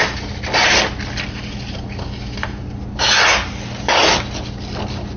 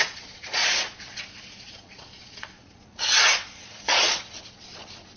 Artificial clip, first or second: second